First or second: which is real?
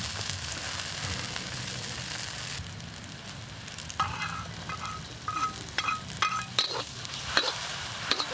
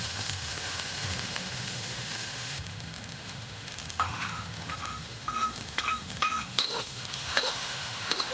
first